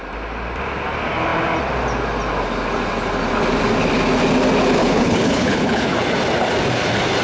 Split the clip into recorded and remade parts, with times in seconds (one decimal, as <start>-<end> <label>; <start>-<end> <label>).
0.0-4.8 recorded; 4.8-5.9 remade; 5.9-7.2 recorded